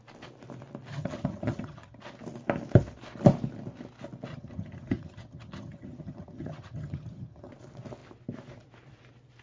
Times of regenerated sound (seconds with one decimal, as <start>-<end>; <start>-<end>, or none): 0.9-2.0; 4.3-7.5